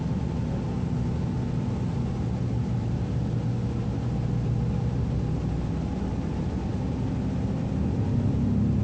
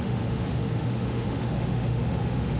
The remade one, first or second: second